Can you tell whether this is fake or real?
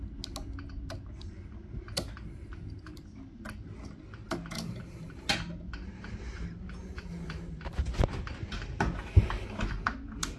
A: real